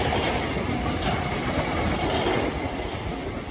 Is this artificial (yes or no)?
no